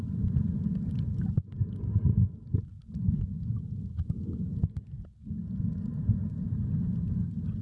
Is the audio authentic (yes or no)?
yes